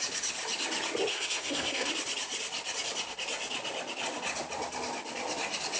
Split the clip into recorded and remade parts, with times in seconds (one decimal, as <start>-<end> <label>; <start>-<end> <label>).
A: 0.0-1.1 recorded; 1.1-1.9 remade; 1.9-5.8 recorded